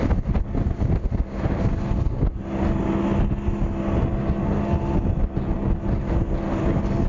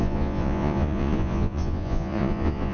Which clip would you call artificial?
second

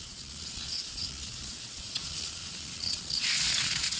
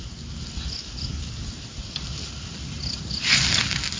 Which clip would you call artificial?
first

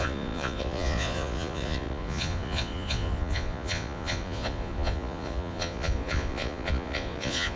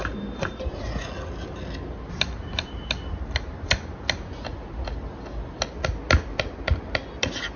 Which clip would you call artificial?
first